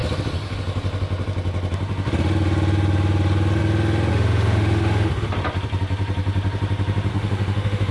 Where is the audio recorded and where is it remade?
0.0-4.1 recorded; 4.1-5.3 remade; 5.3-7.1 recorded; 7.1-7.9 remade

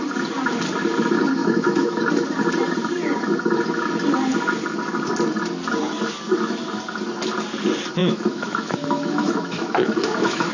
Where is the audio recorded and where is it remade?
0.0-1.4 recorded; 1.4-2.0 remade; 2.0-8.0 recorded; 8.0-10.5 remade

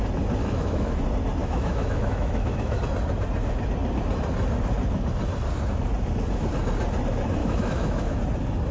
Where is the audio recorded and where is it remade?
0.0-0.4 recorded; 0.4-0.9 remade; 0.9-1.4 recorded; 1.4-2.8 remade; 2.8-7.4 recorded; 7.4-8.2 remade; 8.2-8.7 recorded

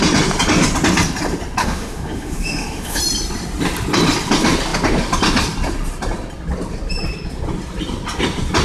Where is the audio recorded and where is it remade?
0.0-1.6 recorded; 1.6-3.0 remade; 3.0-8.6 recorded

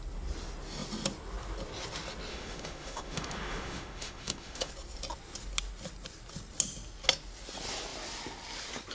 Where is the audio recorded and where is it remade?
0.0-2.3 recorded; 2.3-4.7 remade; 4.7-8.9 recorded

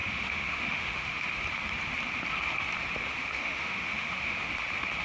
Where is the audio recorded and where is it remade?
0.0-1.2 remade; 1.2-3.1 recorded; 3.1-4.5 remade; 4.5-5.0 recorded

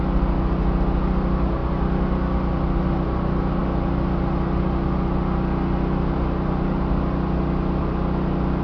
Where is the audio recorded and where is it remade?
0.0-8.6 recorded